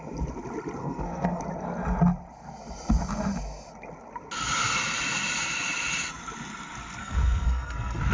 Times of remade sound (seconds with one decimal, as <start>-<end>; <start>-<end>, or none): 0.8-1.4; 7.0-8.1